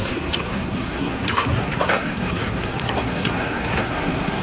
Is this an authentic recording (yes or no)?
no